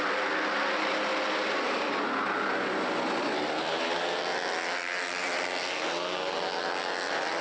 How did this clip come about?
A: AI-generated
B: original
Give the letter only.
A